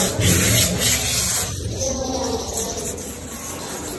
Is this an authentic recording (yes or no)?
yes